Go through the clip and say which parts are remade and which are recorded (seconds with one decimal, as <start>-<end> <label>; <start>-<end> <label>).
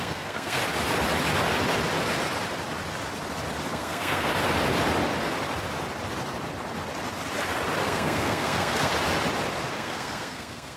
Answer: 0.0-0.6 remade; 0.6-3.7 recorded; 3.7-4.3 remade; 4.3-7.8 recorded; 7.8-8.9 remade; 8.9-9.7 recorded; 9.7-10.8 remade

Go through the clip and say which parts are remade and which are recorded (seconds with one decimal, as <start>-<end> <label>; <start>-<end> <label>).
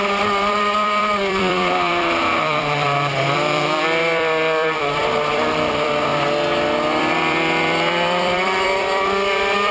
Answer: 0.0-6.1 remade; 6.1-7.0 recorded; 7.0-9.7 remade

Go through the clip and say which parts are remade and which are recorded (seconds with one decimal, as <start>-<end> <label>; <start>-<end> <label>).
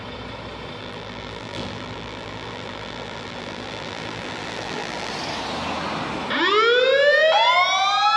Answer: 0.0-0.8 recorded; 0.8-5.1 remade; 5.1-8.2 recorded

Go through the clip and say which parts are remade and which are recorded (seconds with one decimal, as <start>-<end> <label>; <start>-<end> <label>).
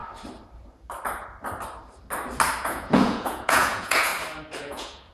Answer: 0.0-2.6 recorded; 2.6-4.1 remade; 4.1-4.6 recorded; 4.6-5.1 remade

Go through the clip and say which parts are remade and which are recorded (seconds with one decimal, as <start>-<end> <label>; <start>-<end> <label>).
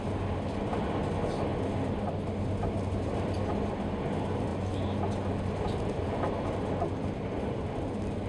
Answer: 0.0-8.3 recorded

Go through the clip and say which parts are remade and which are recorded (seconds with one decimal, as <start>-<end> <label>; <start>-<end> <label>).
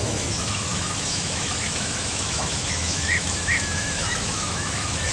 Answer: 0.0-5.1 remade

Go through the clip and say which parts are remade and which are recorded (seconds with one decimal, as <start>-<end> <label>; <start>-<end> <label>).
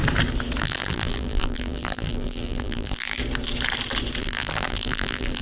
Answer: 0.0-0.6 recorded; 0.6-3.2 remade; 3.2-4.2 recorded; 4.2-5.4 remade